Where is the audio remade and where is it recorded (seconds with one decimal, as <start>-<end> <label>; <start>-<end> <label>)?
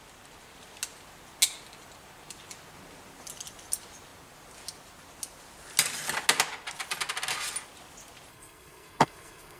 0.0-8.3 recorded; 8.3-9.6 remade